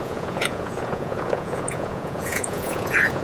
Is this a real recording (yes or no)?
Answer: no